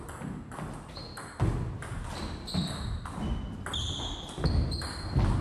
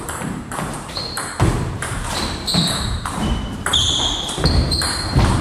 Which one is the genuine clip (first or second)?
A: first